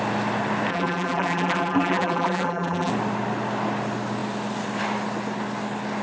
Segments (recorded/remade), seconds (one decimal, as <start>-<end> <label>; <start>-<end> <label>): 0.0-0.7 recorded; 0.7-2.9 remade; 2.9-6.0 recorded